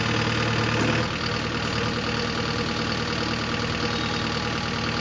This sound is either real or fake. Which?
real